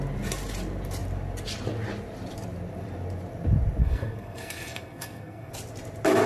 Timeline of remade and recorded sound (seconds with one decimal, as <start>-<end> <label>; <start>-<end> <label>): 0.0-3.8 recorded; 3.8-5.5 remade; 5.5-6.3 recorded